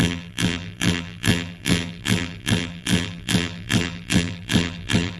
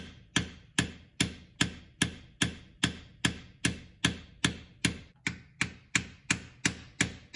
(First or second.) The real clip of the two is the second